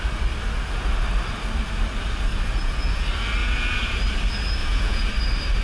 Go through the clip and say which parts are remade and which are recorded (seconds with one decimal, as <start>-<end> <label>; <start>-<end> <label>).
0.0-2.3 recorded; 2.3-3.0 remade; 3.0-3.4 recorded; 3.4-4.0 remade; 4.0-4.6 recorded; 4.6-5.1 remade; 5.1-5.6 recorded